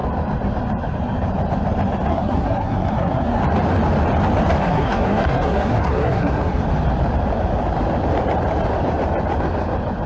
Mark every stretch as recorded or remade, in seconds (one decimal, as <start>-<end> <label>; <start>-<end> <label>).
0.0-2.1 recorded; 2.1-3.4 remade; 3.4-4.6 recorded; 4.6-6.6 remade; 6.6-10.1 recorded